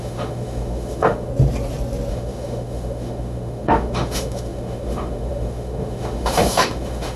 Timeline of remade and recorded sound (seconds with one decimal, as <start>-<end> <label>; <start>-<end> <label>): 0.0-1.3 remade; 1.3-2.1 recorded; 2.1-7.2 remade